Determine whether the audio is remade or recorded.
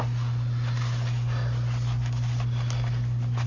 recorded